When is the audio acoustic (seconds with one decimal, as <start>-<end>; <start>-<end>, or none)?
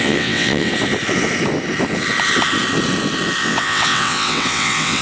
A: 0.7-3.4